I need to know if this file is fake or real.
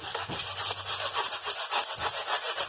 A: real